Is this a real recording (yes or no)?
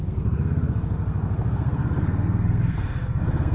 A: no